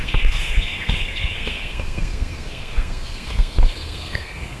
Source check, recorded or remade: remade